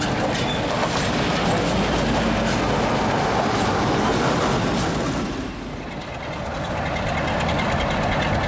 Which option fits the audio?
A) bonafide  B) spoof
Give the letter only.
A